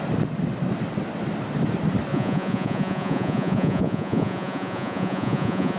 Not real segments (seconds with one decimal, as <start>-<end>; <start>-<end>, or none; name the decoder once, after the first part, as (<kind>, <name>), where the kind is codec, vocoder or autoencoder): 2.1-5.8 (vocoder, Vocos)